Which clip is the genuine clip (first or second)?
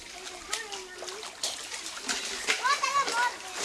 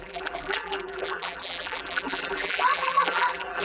first